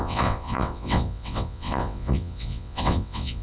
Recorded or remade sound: remade